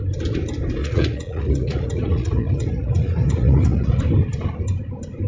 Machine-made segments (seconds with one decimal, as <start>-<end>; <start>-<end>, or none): 0.8-4.0